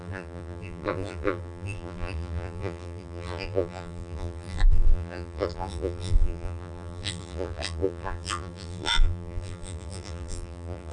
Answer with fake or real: fake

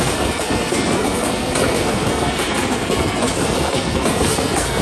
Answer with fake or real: fake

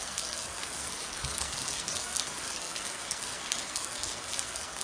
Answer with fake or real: fake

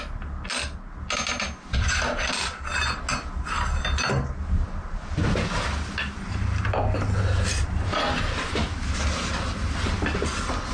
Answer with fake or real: real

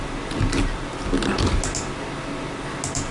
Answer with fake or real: real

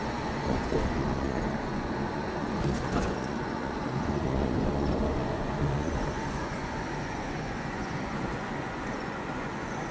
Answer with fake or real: fake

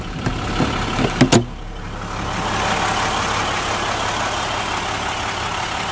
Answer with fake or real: real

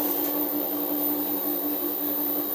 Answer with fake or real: real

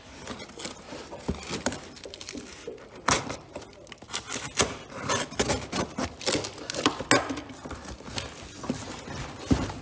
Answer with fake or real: real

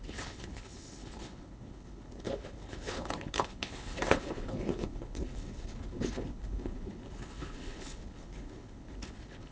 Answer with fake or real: fake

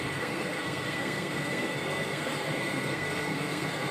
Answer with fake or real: fake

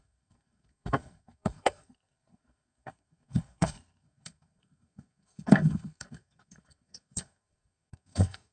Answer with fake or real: fake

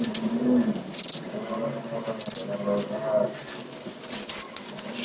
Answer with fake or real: real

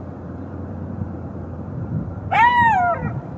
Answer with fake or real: fake